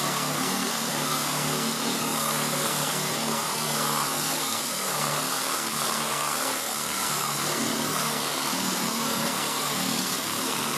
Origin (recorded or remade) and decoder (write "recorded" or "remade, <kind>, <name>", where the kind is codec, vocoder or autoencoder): remade, codec, SNAC